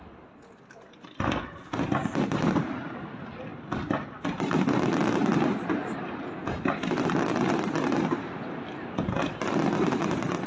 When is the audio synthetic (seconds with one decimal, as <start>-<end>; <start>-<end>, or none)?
none

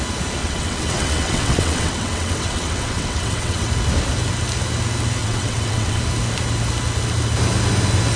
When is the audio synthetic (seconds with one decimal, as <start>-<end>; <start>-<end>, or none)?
0.4-3.7; 5.2-6.0